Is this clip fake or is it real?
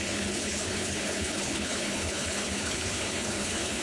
fake